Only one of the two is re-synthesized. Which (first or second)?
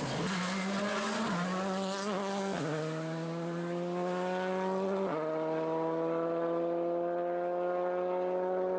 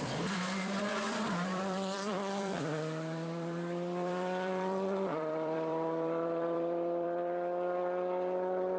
second